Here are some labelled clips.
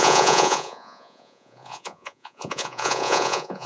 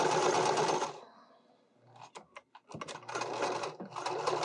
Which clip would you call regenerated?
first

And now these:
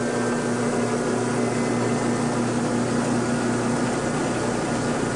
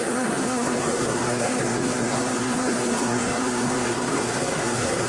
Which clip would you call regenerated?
second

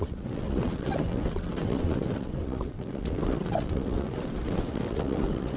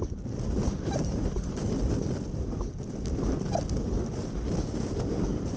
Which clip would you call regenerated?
first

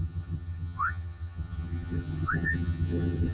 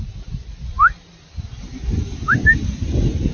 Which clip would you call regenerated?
first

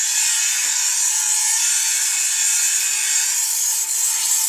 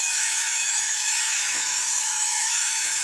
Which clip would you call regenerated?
second